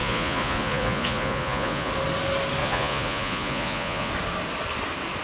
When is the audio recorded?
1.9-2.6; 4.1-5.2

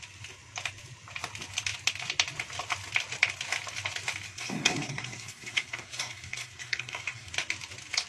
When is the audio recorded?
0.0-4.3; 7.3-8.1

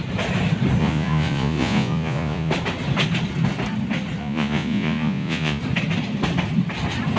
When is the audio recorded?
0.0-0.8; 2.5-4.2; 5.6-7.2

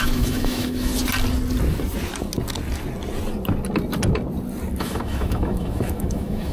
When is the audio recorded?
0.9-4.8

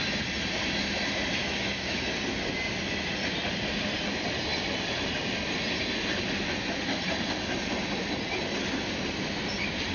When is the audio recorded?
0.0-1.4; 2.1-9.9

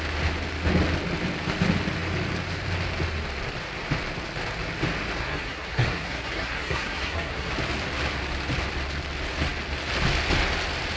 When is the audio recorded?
0.0-5.2; 7.5-11.0